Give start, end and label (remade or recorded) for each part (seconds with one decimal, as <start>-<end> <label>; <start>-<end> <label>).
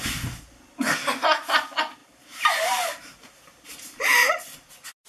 0.0-2.0 recorded; 2.0-3.4 remade; 3.4-5.1 recorded